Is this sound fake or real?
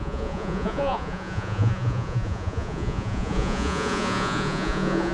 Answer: fake